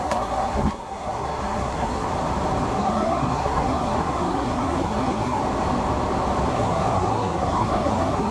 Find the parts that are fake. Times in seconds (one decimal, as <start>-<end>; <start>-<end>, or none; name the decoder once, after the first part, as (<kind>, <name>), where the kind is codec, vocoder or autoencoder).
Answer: 0.0-2.1 (codec, SNAC); 2.8-5.4; 6.5-8.3